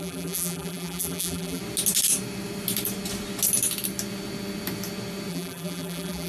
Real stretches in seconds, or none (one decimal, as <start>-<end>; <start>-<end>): 1.6-5.3